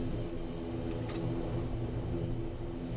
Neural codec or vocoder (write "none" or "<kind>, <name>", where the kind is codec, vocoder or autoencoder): none